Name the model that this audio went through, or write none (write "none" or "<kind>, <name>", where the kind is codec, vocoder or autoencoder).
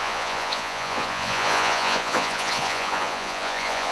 vocoder, Vocos